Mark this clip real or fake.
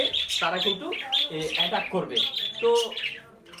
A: real